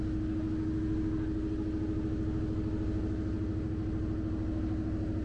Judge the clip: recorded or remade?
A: recorded